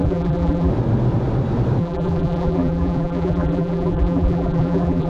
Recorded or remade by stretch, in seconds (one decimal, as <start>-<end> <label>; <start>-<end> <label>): 0.0-0.7 remade; 0.7-1.8 recorded; 1.8-5.1 remade